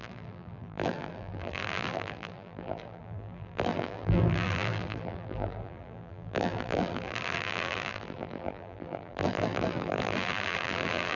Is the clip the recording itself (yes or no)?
no